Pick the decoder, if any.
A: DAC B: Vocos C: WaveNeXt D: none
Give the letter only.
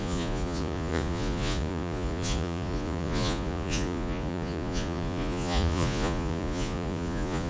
B